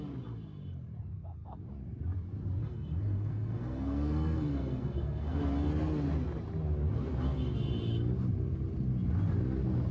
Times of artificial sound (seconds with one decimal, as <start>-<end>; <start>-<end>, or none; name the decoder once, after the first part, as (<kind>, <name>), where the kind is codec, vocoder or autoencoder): 2.6-5.4 (codec, SNAC)

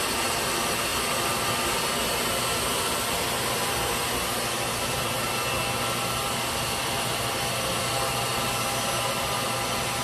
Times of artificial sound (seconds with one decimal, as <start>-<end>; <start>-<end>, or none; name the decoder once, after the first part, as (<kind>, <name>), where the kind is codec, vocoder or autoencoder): none

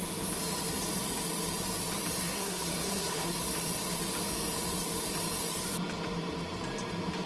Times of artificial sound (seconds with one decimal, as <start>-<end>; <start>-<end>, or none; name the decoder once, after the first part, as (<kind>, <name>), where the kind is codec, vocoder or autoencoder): 2.2-3.4 (codec, SNAC)

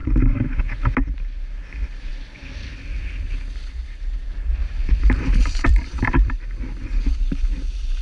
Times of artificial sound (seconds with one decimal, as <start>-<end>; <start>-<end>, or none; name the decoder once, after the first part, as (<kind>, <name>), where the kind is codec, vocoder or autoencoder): 0.0-0.6 (vocoder, BigVGAN v2); 4.6-6.1

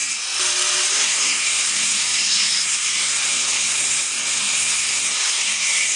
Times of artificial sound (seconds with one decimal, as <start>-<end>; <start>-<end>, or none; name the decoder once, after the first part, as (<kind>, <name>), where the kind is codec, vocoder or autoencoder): 0.9-6.0 (codec, SNAC)